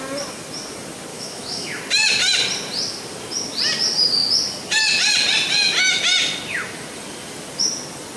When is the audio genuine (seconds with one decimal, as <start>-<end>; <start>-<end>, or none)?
0.0-1.1; 1.8-8.2